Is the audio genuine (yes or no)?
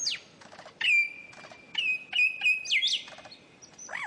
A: yes